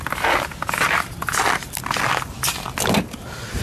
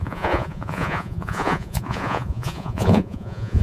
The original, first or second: first